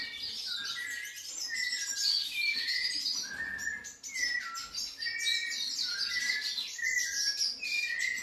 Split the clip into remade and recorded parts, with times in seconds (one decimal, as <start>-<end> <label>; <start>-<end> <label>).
0.0-2.2 recorded; 2.2-3.0 remade; 3.0-8.2 recorded